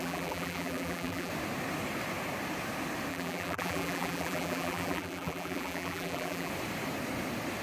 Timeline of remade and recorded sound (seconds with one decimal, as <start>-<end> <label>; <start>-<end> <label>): 0.0-1.3 remade; 1.3-3.1 recorded; 3.1-6.5 remade; 6.5-7.6 recorded

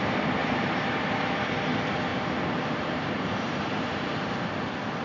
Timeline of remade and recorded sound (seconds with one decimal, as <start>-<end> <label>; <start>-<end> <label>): 0.0-0.4 recorded; 0.4-1.0 remade; 1.0-2.1 recorded; 2.1-4.3 remade; 4.3-5.0 recorded

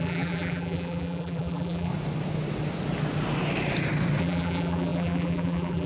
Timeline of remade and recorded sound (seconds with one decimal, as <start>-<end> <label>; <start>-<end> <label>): 0.0-1.9 remade; 1.9-4.2 recorded; 4.2-5.9 remade

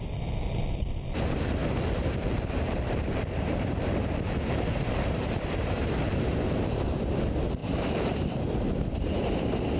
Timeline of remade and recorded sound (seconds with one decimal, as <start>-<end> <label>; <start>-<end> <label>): 0.0-1.6 recorded; 1.6-6.8 remade; 6.8-7.6 recorded; 7.6-8.2 remade; 8.2-9.8 recorded